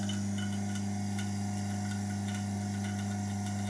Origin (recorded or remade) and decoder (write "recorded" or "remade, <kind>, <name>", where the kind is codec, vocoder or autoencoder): recorded